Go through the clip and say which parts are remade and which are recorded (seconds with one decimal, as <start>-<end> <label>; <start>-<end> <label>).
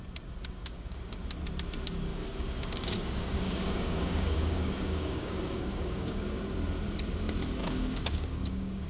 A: 0.0-0.6 recorded; 0.6-1.2 remade; 1.2-2.1 recorded; 2.1-6.4 remade; 6.4-7.6 recorded; 7.6-8.9 remade